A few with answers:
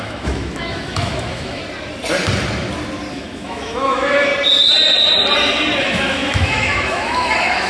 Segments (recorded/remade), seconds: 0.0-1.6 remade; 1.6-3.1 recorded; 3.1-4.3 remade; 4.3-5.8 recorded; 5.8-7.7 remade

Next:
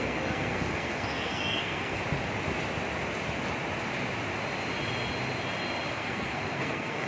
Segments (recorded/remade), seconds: 0.0-2.0 remade; 2.0-5.9 recorded; 5.9-7.1 remade

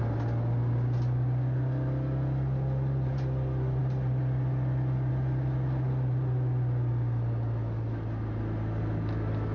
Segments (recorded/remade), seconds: 0.0-9.5 recorded

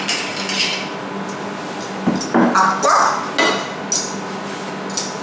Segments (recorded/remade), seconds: 0.0-5.2 recorded

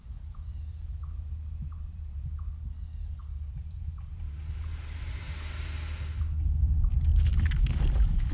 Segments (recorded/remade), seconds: 0.0-1.6 recorded; 1.6-2.2 remade; 2.2-3.2 recorded; 3.2-5.2 remade; 5.2-8.3 recorded

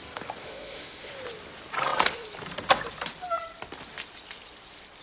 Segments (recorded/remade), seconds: 0.0-0.4 recorded; 0.4-1.1 remade; 1.1-5.0 recorded